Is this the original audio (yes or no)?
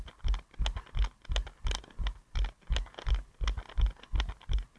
yes